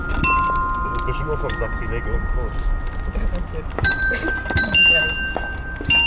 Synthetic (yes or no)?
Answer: no